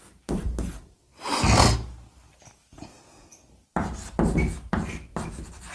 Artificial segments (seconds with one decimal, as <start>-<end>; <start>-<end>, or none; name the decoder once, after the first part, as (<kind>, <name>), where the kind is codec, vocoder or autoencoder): 2.7-3.3 (vocoder, Vocos)